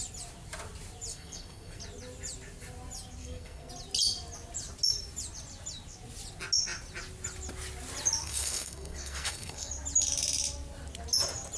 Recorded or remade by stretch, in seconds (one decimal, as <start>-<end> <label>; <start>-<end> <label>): 0.0-1.1 recorded; 1.1-1.8 remade; 1.8-3.2 recorded; 3.2-3.7 remade; 3.7-8.2 recorded; 8.2-9.7 remade; 9.7-11.6 recorded